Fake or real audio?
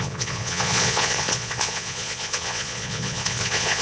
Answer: fake